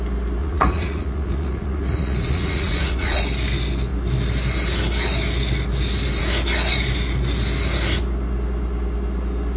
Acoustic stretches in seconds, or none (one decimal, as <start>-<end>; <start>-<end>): 0.0-0.4; 3.2-9.6